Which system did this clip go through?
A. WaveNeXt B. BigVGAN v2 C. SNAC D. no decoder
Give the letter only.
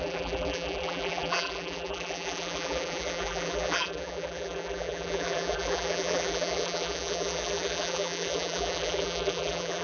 B